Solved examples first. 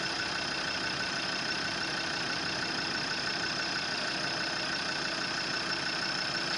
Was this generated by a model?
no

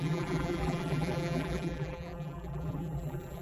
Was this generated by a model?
yes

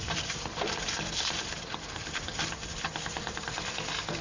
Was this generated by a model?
yes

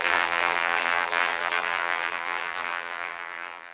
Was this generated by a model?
yes